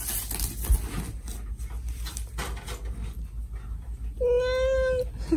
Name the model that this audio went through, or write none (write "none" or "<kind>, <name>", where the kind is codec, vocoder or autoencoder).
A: none